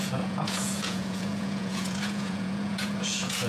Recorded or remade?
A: remade